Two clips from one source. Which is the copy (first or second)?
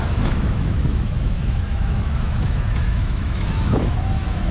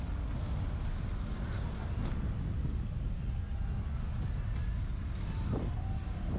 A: first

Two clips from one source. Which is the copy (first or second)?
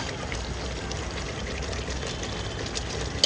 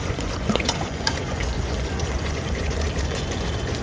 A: second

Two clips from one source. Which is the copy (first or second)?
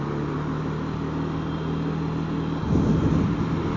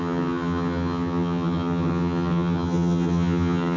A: second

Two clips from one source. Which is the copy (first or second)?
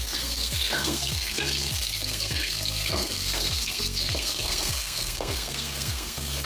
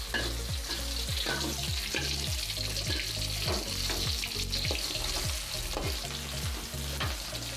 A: first